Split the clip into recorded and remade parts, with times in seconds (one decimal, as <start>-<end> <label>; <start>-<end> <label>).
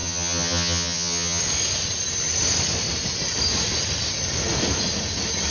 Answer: 0.0-1.4 remade; 1.4-5.5 recorded